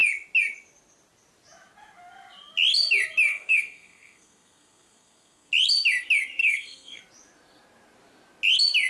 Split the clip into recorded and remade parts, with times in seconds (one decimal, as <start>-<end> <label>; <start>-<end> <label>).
0.0-3.3 recorded; 3.3-5.5 remade; 5.5-6.4 recorded; 6.4-7.0 remade; 7.0-8.9 recorded